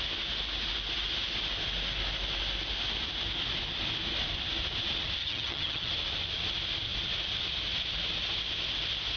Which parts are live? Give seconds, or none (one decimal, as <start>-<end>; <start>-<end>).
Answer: 0.0-5.2; 5.9-9.2